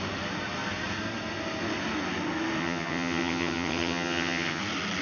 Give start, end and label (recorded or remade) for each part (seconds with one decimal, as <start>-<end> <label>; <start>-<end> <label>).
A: 0.0-2.6 recorded; 2.6-4.6 remade; 4.6-5.0 recorded